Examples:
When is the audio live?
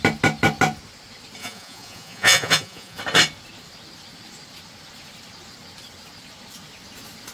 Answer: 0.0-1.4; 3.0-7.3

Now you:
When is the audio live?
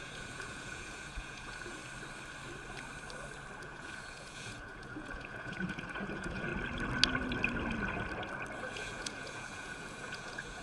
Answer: 1.8-3.6; 6.5-8.6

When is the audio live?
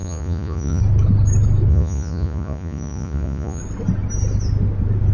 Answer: 0.8-1.7; 3.6-5.1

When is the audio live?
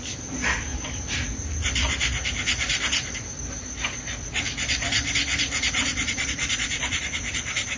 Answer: 0.0-5.9; 7.0-7.8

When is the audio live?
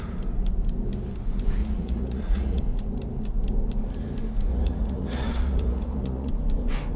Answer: 0.0-1.6; 2.6-4.5; 6.3-7.0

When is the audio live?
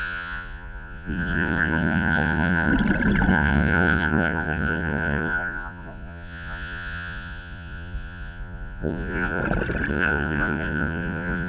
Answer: 2.7-3.3; 9.4-9.9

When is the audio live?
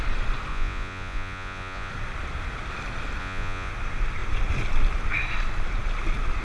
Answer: 0.0-0.5; 1.9-3.2; 3.7-6.4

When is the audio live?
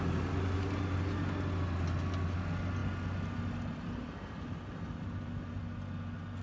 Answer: 0.0-6.4